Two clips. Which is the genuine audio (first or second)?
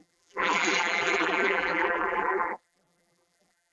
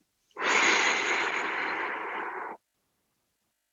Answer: second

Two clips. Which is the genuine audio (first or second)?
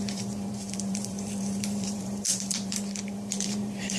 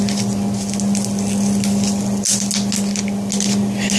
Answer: second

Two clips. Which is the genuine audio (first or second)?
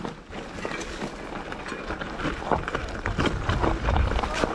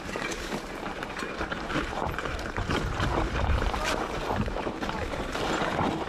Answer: first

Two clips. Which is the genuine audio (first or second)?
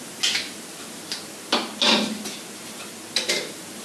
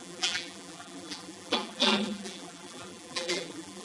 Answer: first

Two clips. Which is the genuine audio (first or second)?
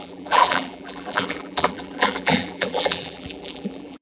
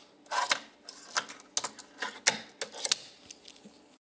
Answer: second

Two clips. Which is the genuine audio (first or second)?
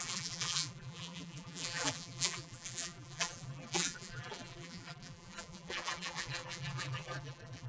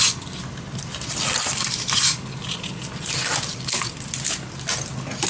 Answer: second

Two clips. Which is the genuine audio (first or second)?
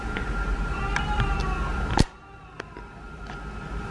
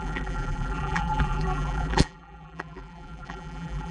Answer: first